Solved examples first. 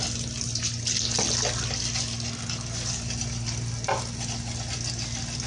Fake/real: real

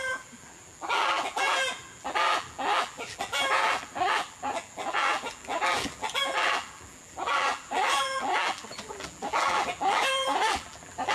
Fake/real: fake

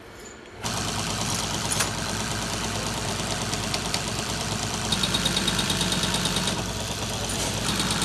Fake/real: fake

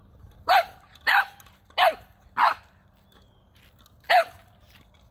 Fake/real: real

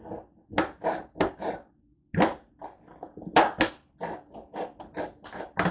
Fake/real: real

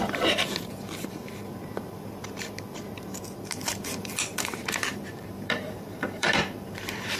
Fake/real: fake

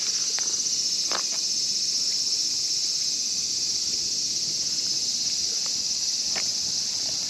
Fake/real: real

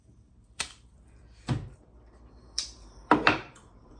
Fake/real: fake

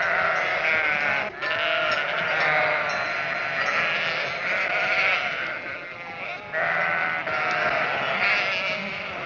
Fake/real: real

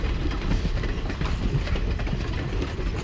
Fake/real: fake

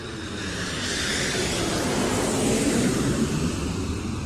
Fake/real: real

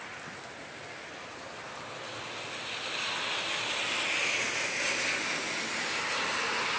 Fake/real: real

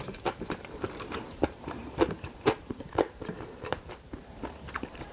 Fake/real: fake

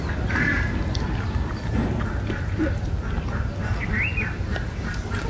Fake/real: fake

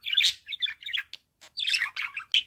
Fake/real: real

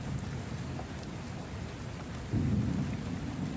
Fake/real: real